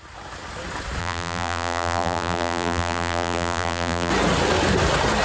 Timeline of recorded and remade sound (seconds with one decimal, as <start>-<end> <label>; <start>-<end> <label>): 0.0-1.0 recorded; 1.0-4.1 remade; 4.1-5.2 recorded